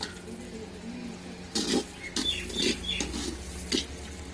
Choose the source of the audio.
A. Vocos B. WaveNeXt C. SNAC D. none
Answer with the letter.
D